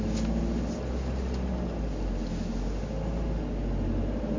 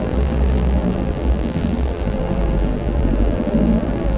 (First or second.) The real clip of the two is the first